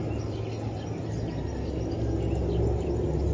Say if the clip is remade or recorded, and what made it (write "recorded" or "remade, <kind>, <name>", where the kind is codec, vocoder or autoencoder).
recorded